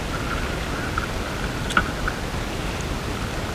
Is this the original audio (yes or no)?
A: yes